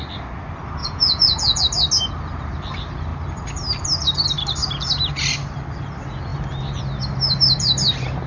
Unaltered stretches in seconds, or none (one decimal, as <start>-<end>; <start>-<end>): 0.0-0.8; 1.6-8.3